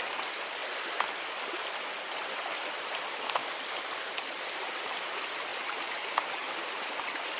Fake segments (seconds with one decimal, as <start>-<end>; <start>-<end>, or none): 0.0-0.6; 2.4-3.4; 4.7-5.5; 6.5-7.4